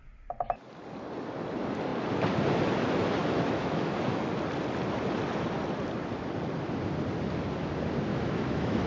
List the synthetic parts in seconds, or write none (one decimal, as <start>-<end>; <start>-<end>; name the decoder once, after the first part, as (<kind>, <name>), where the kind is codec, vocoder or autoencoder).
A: 3.2-4.2 (autoencoder, DAC-VAE); 8.1-8.9

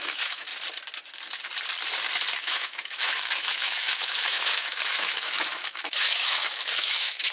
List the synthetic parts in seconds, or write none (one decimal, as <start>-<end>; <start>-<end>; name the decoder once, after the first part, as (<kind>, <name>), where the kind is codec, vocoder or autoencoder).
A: 0.0-0.5 (autoencoder, DAC-VAE); 2.3-7.3

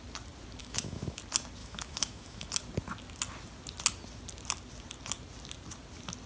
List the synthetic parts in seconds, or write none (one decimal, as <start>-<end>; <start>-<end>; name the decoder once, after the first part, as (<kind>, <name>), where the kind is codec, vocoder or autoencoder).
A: 0.6-1.2 (autoencoder, DAC-VAE); 1.6-2.5

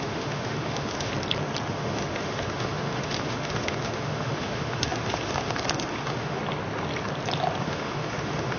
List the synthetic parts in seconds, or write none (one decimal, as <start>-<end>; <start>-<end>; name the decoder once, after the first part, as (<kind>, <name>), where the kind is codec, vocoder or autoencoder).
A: 0.0-1.1 (autoencoder, DAC-VAE); 1.7-6.4; 7.6-8.6

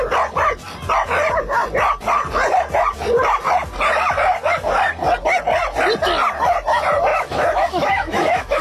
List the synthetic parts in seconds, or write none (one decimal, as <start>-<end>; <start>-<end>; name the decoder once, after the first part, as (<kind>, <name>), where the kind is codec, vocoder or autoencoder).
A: 7.1-8.6 (autoencoder, DAC-VAE)

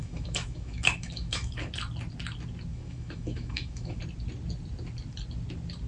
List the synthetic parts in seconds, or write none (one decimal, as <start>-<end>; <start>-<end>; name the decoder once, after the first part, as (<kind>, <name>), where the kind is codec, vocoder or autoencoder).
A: 0.0-1.7 (autoencoder, DAC-VAE); 2.7-4.0